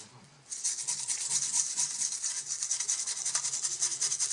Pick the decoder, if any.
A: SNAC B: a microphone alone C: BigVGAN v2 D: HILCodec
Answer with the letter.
B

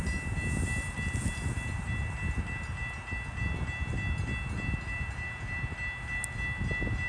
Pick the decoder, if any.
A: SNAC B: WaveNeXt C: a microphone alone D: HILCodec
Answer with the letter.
C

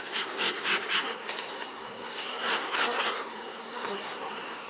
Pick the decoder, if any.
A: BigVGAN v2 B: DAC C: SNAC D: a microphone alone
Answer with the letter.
C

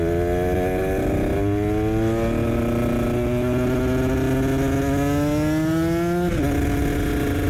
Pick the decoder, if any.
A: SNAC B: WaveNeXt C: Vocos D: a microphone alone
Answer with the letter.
D